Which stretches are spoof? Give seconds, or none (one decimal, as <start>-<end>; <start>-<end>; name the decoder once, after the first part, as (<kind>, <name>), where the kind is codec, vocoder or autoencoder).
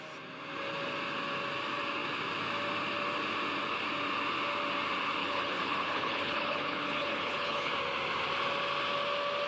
5.2-7.7 (codec, HILCodec)